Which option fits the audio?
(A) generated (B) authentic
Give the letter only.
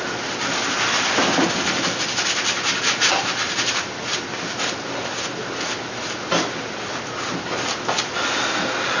B